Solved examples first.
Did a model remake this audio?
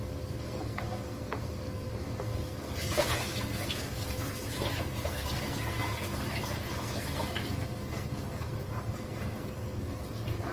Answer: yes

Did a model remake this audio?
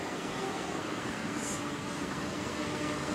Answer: yes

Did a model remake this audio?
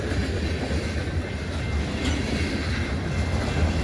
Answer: no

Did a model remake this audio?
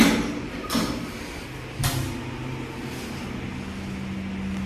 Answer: no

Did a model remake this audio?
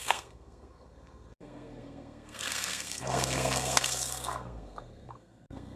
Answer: yes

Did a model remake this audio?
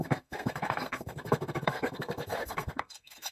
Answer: yes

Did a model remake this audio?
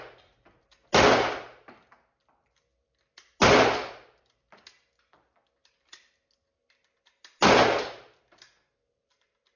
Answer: no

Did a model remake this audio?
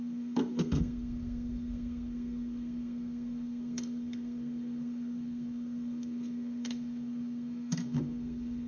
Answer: yes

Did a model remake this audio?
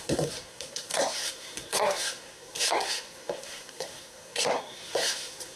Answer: yes